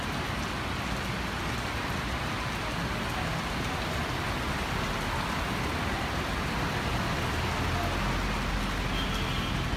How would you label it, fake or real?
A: real